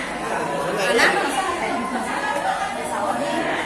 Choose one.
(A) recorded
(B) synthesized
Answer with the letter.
A